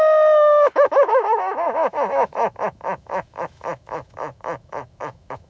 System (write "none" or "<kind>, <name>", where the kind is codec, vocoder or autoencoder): autoencoder, DAC-VAE